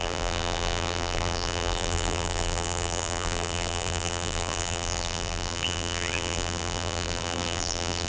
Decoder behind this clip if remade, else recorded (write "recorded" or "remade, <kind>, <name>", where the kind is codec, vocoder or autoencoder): remade, vocoder, BigVGAN v2